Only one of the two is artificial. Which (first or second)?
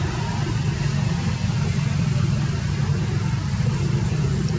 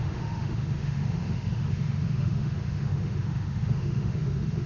second